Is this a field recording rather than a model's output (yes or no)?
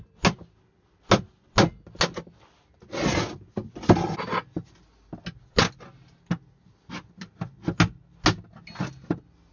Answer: yes